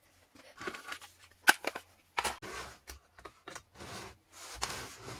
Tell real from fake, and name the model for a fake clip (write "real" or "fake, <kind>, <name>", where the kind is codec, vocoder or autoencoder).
real